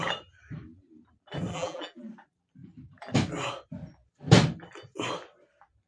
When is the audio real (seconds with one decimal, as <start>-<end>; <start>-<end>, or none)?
0.0-1.5; 2.1-5.9